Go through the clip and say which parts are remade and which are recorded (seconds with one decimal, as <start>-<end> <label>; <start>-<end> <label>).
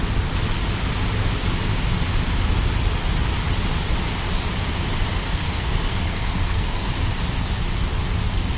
0.0-5.2 recorded; 5.2-6.9 remade; 6.9-8.6 recorded